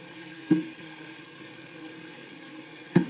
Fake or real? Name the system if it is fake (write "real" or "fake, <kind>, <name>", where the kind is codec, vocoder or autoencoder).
fake, codec, SNAC